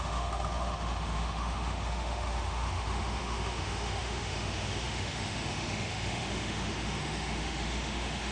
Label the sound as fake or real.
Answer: fake